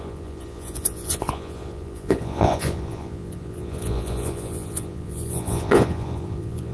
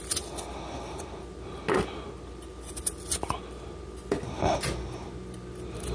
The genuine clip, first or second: second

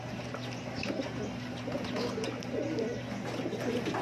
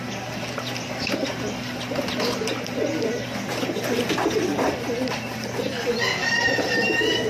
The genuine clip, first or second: first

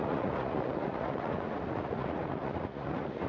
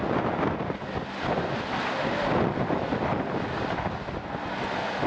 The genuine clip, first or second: second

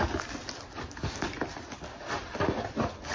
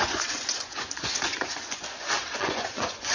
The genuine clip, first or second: first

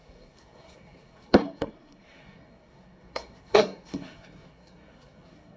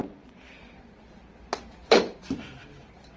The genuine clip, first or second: second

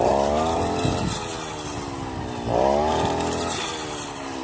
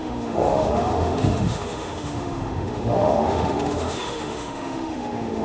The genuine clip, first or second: first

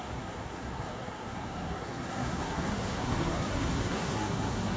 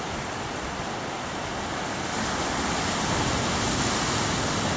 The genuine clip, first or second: second